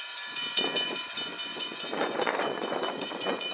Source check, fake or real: fake